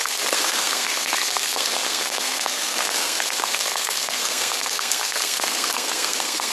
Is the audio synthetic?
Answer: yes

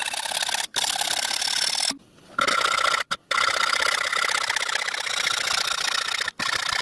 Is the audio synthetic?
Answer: no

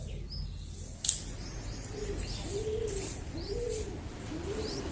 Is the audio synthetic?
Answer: no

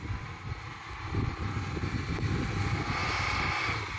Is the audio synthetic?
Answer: no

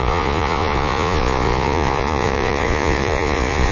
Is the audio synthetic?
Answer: yes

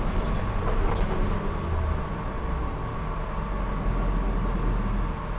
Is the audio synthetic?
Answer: no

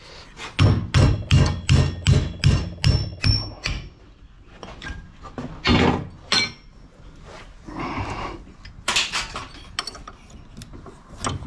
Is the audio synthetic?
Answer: no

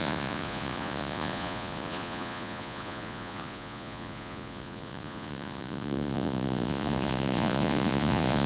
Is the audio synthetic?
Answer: yes